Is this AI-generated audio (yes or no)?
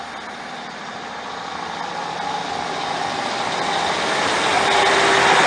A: no